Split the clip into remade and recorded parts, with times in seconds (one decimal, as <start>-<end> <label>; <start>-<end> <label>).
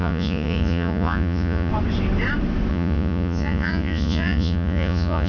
0.0-1.7 remade; 1.7-2.7 recorded; 2.7-5.3 remade